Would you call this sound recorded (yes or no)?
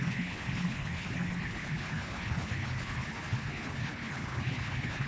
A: no